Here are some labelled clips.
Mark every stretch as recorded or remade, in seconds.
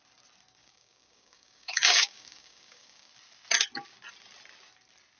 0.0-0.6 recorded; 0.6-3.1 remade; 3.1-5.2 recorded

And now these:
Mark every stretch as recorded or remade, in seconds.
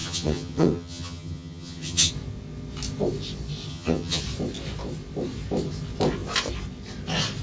0.0-2.1 remade; 2.1-3.7 recorded; 3.7-4.2 remade; 4.2-7.4 recorded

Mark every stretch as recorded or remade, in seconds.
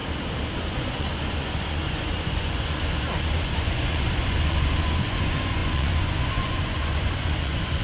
0.0-0.5 recorded; 0.5-7.8 remade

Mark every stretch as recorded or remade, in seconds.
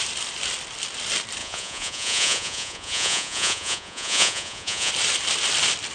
0.0-1.4 recorded; 1.4-4.9 remade; 4.9-5.9 recorded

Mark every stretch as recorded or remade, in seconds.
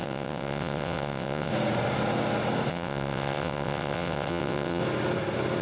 0.0-1.5 remade; 1.5-2.7 recorded; 2.7-4.8 remade; 4.8-5.6 recorded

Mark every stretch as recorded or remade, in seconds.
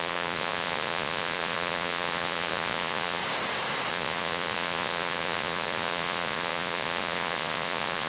0.0-3.2 remade; 3.2-3.9 recorded; 3.9-8.1 remade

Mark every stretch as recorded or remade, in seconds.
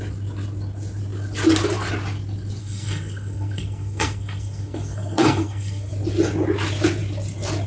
0.0-2.6 recorded; 2.6-5.9 remade; 5.9-7.7 recorded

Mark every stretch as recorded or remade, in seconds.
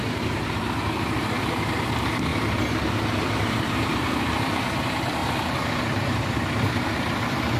0.0-2.3 remade; 2.3-3.2 recorded; 3.2-5.2 remade; 5.2-5.8 recorded; 5.8-7.6 remade